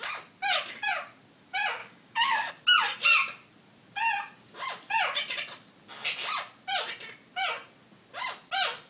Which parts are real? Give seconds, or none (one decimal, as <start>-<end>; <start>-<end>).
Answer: 0.0-1.8; 2.5-8.9